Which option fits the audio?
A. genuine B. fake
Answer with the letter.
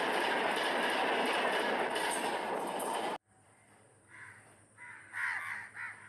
A